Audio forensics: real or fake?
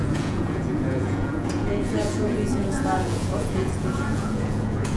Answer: fake